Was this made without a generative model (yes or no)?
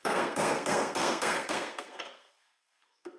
no